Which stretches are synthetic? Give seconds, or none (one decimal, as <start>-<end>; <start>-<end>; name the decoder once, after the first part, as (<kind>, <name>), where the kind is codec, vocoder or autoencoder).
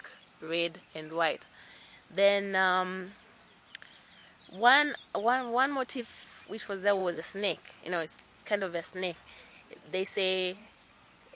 0.0-0.8 (vocoder, Vocos); 7.0-11.3